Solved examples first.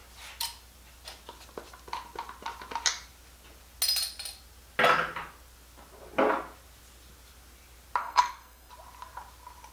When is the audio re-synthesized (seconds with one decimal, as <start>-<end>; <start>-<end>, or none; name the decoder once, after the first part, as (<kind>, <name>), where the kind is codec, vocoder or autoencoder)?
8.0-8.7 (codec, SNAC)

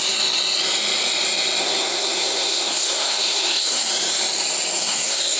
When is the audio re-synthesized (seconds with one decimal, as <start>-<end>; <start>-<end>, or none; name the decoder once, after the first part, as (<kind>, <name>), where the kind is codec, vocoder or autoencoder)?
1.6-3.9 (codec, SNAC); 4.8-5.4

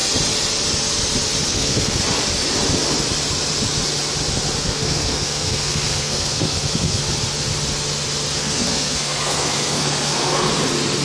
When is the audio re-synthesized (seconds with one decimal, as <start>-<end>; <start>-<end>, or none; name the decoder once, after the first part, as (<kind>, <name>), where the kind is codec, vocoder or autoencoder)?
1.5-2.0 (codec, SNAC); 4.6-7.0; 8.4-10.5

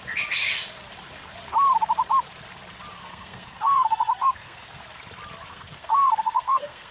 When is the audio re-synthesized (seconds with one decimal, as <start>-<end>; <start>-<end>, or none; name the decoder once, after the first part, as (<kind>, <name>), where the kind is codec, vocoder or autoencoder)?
3.0-4.8 (codec, SNAC); 5.5-6.9

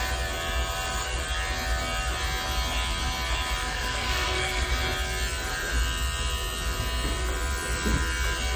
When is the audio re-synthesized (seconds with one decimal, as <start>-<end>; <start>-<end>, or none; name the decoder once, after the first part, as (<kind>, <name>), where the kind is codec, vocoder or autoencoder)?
3.6-4.7 (codec, SNAC)